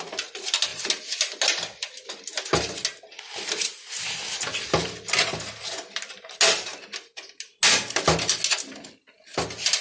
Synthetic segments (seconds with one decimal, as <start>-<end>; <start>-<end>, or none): none